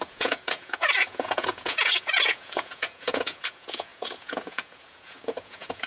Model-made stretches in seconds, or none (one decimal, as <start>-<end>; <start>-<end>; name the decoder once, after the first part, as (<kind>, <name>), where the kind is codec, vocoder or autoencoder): 0.0-5.9 (vocoder, Vocos)